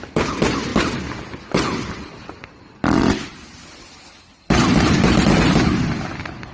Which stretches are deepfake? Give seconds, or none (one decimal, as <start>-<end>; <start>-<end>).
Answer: none